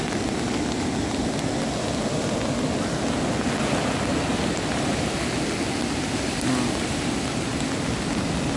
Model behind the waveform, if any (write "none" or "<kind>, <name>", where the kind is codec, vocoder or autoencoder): none